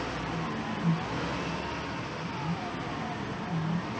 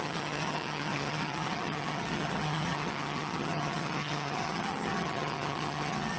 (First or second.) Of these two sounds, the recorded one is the first